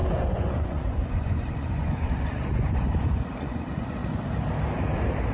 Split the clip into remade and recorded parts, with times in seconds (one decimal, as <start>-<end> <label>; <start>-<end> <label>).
0.0-4.0 remade; 4.0-5.3 recorded